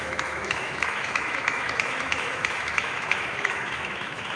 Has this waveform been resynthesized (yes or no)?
yes